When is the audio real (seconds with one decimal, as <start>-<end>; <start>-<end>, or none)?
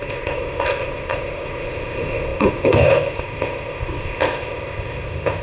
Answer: none